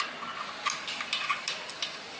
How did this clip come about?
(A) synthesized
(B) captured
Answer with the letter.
B